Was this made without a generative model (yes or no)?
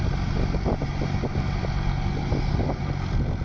yes